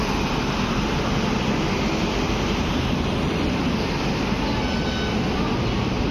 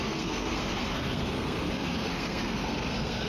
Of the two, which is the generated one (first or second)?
second